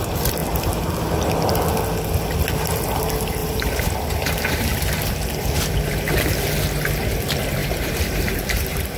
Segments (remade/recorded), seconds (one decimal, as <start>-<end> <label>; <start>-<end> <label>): 0.0-3.4 recorded; 3.4-4.8 remade; 4.8-7.6 recorded; 7.6-9.0 remade